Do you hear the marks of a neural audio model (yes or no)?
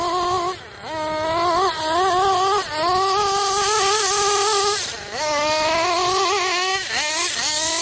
no